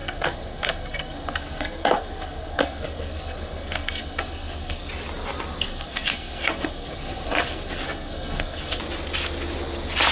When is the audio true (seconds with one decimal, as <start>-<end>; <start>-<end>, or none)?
4.9-5.7; 8.8-10.1